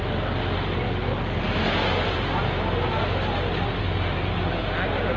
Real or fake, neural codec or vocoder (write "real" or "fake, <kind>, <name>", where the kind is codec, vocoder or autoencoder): real